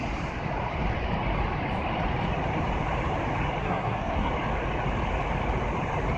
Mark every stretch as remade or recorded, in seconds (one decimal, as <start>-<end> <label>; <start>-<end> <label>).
0.0-3.6 recorded; 3.6-4.3 remade; 4.3-6.2 recorded